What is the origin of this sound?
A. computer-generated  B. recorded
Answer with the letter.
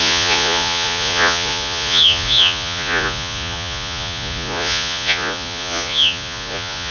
A